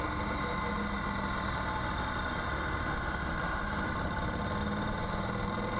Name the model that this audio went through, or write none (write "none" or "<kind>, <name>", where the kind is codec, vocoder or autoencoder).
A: none